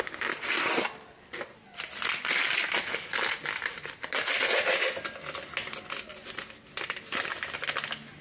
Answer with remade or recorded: recorded